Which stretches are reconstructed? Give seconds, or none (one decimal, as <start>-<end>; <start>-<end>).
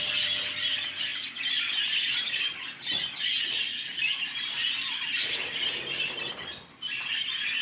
none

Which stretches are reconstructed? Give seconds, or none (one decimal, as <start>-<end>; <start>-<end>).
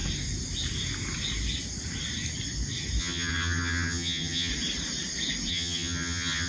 3.0-4.5; 5.5-6.5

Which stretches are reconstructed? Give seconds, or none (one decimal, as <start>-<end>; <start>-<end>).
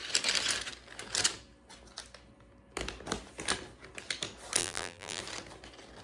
4.6-5.2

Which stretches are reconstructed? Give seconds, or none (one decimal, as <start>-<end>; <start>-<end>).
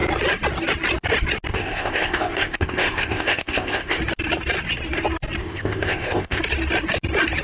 1.5-4.0; 5.4-6.4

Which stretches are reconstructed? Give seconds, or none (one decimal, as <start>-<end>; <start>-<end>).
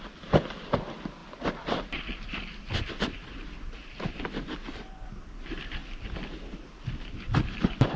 none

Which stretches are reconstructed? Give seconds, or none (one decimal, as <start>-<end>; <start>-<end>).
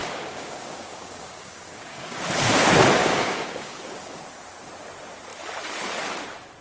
0.0-2.2; 3.0-4.2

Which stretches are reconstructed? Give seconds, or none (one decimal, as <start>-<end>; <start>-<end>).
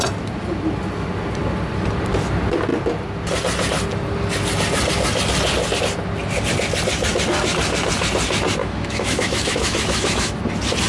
8.6-10.4